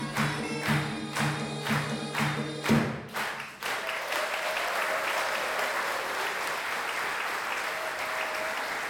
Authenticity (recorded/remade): recorded